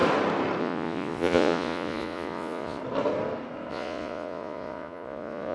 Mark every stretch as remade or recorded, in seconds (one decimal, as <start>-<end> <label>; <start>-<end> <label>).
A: 0.0-0.6 recorded; 0.6-2.8 remade; 2.8-3.7 recorded; 3.7-5.5 remade